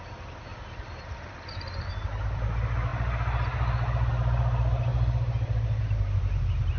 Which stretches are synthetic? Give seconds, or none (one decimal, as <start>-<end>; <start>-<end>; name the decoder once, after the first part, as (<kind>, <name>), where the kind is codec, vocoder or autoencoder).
0.5-2.4 (vocoder, BigVGAN v2); 4.9-5.8